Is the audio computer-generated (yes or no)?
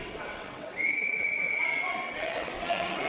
yes